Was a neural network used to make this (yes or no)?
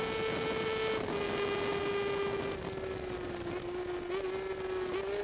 no